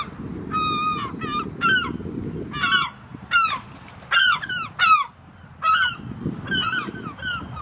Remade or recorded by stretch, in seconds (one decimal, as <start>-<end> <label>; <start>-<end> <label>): 0.0-3.1 recorded; 3.1-4.0 remade; 4.0-7.6 recorded